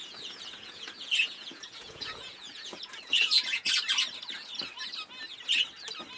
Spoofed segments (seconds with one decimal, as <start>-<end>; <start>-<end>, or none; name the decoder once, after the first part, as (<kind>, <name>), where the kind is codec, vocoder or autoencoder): 0.0-3.7 (vocoder, Vocos)